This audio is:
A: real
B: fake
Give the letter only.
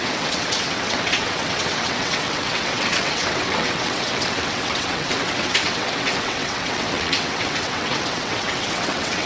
B